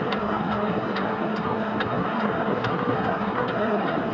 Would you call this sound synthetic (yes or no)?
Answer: yes